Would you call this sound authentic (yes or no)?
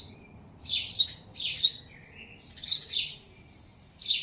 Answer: yes